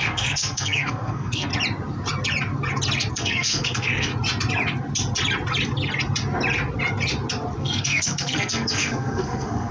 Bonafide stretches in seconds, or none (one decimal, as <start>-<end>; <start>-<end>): 1.5-3.1; 4.1-7.6